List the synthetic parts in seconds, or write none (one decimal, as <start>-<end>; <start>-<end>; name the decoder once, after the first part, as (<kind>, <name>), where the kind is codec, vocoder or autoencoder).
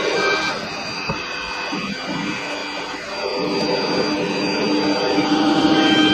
none